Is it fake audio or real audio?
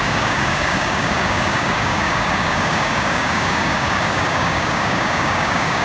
fake